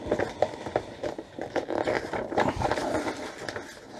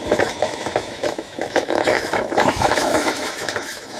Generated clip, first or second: second